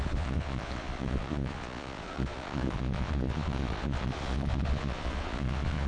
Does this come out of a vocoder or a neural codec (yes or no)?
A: yes